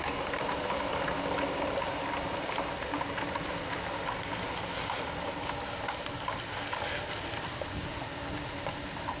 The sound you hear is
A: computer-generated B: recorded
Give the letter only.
B